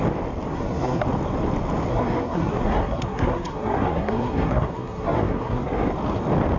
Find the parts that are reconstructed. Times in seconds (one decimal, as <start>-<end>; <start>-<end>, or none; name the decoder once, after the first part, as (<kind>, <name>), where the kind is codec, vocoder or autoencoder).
0.5-1.0 (codec, SNAC); 1.9-5.9